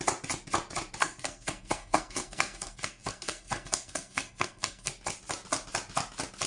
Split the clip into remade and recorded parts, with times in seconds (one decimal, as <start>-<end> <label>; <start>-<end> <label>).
0.0-1.0 recorded; 1.0-4.9 remade; 4.9-6.5 recorded